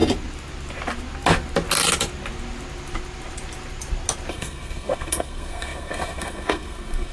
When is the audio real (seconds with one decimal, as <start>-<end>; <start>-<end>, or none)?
0.0-4.3